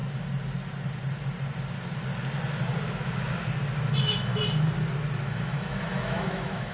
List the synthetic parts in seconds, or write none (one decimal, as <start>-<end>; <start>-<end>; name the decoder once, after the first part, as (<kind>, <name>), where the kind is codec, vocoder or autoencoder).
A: 4.0-4.4 (autoencoder, DAC-VAE); 5.2-6.7